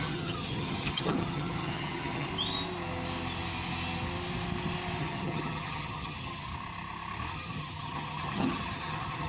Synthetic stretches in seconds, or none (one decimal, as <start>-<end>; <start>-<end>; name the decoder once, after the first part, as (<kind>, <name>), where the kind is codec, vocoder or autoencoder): 0.0-2.3 (vocoder, HiFi-GAN); 5.0-6.5; 7.3-9.3